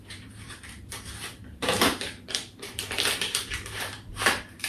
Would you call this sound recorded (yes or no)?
no